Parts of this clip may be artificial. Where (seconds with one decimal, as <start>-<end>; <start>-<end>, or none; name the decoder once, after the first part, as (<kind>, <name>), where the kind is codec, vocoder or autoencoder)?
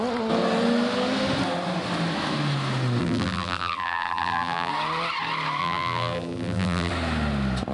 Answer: 3.0-4.7 (vocoder, BigVGAN v2); 5.6-6.9